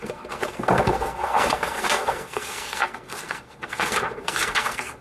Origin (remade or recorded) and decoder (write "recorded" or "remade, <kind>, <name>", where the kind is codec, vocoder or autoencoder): remade, codec, SNAC